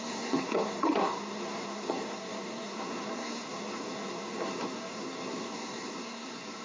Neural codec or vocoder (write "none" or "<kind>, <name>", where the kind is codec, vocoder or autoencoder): codec, SNAC